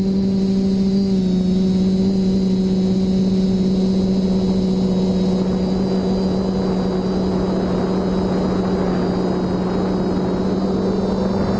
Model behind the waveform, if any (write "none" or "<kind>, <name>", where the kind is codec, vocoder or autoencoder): none